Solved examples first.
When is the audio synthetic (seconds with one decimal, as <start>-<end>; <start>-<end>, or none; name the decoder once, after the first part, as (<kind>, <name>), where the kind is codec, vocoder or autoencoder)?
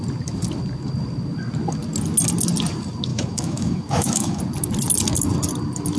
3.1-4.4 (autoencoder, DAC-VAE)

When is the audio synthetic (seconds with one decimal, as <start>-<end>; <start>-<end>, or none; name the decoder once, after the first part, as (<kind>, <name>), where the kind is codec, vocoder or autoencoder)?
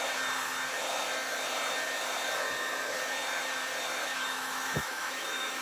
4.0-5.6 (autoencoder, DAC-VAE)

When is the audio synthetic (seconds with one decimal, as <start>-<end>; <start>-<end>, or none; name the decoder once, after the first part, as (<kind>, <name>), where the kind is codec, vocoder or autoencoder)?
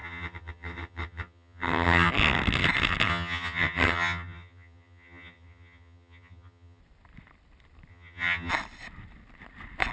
0.0-2.1 (vocoder, HiFi-GAN); 3.1-6.8; 7.9-8.5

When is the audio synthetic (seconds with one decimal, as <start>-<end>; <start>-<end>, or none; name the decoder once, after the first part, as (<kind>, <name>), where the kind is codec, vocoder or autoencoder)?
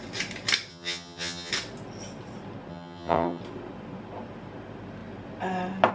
0.7-1.5 (vocoder, HiFi-GAN); 2.7-3.4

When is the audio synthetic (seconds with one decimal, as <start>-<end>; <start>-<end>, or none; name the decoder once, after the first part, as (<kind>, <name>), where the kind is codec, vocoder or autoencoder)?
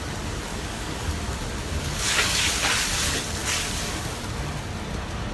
0.5-1.1 (codec, DAC); 1.8-2.5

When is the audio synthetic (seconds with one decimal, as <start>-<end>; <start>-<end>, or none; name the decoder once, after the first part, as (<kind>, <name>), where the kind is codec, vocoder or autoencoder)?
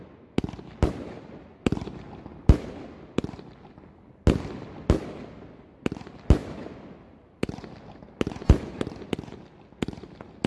none